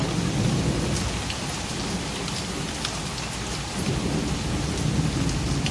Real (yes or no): yes